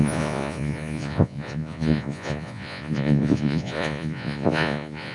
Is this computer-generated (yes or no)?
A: yes